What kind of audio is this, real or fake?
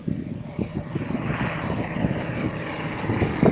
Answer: real